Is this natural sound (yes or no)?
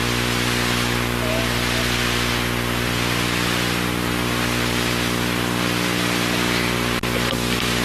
yes